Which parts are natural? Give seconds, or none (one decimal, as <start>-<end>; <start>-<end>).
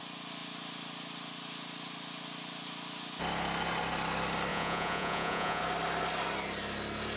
0.0-4.5; 5.6-7.2